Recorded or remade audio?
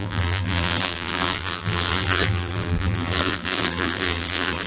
remade